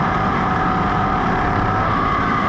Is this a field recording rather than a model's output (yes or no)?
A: no